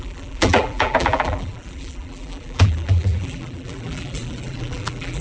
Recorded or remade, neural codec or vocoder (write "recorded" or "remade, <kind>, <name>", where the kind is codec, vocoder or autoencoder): remade, vocoder, BigVGAN v2